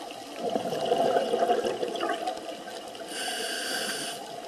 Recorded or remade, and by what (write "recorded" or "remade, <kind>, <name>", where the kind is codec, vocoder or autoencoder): recorded